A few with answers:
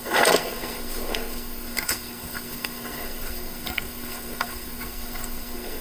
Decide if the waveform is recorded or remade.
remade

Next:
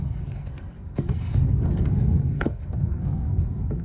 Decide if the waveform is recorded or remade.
remade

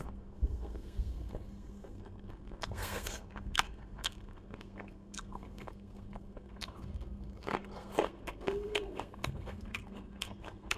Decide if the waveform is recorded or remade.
remade